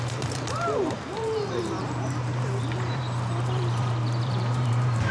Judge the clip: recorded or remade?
remade